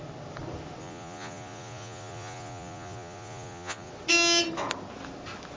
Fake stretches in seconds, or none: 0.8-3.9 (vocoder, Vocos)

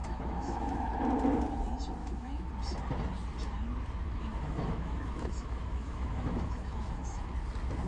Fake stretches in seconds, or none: 0.0-0.8 (autoencoder, DAC-VAE); 2.0-2.5; 4.0-7.3